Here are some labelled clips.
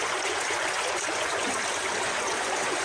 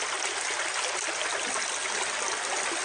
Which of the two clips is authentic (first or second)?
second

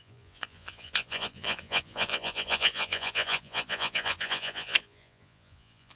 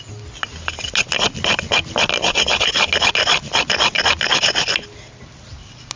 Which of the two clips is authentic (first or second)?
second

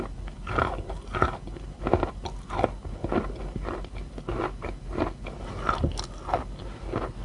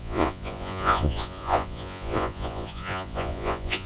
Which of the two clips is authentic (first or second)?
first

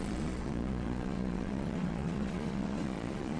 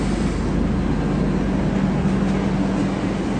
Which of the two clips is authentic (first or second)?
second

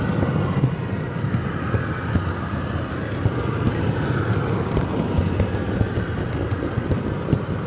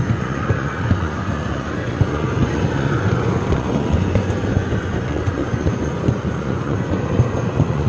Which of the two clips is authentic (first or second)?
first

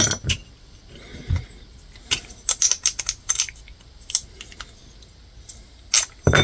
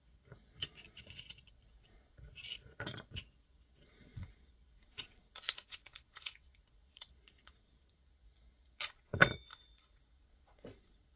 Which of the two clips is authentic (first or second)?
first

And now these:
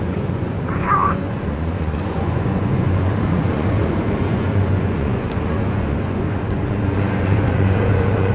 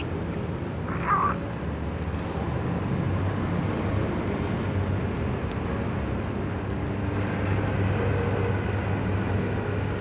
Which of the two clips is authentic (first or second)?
second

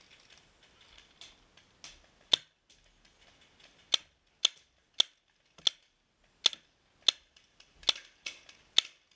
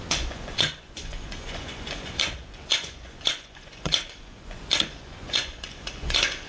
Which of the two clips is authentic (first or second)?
first